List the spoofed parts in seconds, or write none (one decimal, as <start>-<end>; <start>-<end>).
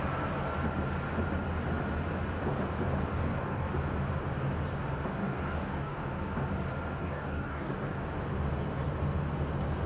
3.1-3.7; 5.2-6.0; 7.0-7.7